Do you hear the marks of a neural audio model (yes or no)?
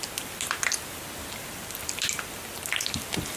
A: no